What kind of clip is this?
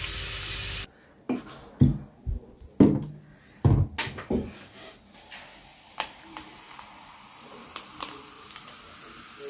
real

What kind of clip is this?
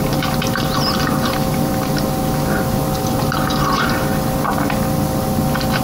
real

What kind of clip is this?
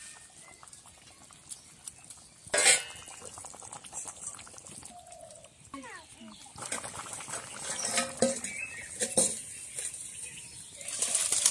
real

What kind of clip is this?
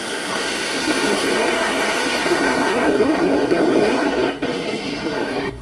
fake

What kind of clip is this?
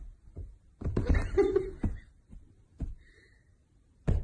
fake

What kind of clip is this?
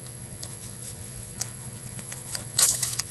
fake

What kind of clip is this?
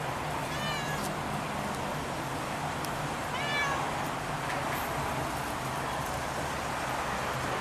real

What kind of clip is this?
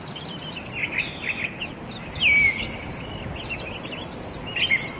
real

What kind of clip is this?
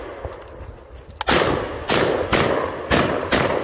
real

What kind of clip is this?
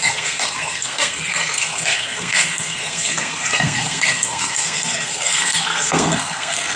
fake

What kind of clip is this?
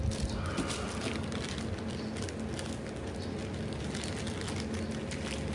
real